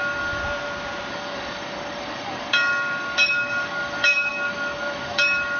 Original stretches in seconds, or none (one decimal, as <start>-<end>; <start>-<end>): 0.4-1.1